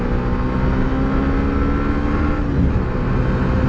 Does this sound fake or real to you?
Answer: real